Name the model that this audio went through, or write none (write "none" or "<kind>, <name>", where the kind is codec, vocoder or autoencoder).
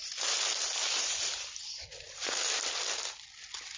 none